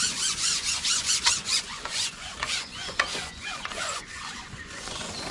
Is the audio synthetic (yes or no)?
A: yes